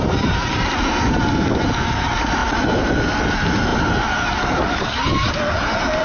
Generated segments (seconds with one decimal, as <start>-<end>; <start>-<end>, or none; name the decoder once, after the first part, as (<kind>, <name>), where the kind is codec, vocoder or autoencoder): none